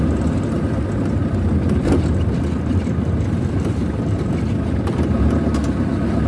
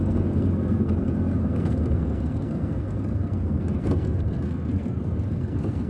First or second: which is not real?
second